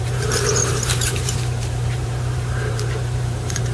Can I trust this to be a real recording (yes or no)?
no